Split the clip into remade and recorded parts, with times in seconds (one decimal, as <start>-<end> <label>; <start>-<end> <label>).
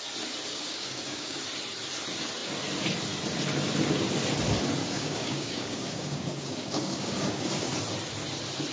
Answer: 0.0-0.5 recorded; 0.5-1.4 remade; 1.4-4.8 recorded; 4.8-7.7 remade; 7.7-8.7 recorded